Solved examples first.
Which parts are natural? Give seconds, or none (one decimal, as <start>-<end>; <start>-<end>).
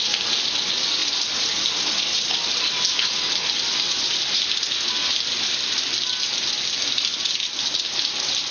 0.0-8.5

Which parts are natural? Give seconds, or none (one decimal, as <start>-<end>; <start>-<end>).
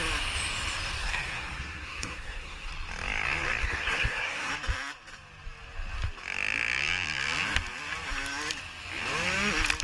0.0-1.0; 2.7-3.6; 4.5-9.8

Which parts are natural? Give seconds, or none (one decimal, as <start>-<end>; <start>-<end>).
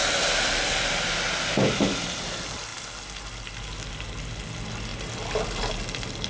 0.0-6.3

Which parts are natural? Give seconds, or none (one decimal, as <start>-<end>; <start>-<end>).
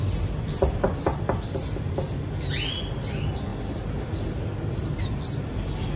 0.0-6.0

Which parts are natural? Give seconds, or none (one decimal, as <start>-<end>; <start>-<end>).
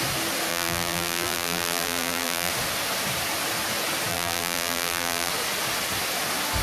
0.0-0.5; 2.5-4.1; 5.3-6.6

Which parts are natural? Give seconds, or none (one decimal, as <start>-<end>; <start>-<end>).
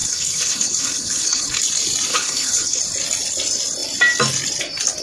1.6-2.1; 2.8-5.0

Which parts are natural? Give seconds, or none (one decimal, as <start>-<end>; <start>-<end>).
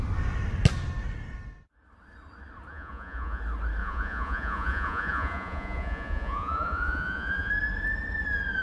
0.0-2.7; 3.4-3.8; 7.5-8.6